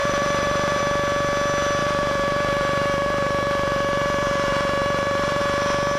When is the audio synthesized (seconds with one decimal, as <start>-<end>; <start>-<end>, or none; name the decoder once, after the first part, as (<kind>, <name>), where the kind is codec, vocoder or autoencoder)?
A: 0.0-0.8 (vocoder, BigVGAN v2); 1.8-5.4